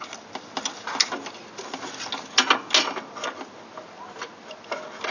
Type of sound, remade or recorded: recorded